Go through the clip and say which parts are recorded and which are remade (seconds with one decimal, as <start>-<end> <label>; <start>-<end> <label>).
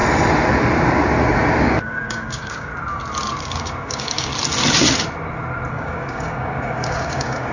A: 0.0-1.6 recorded; 1.6-2.7 remade; 2.7-3.4 recorded; 3.4-4.3 remade; 4.3-5.7 recorded; 5.7-7.5 remade